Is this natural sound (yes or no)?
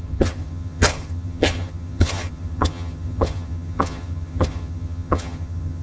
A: no